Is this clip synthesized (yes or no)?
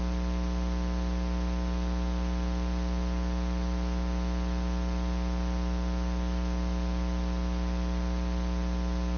no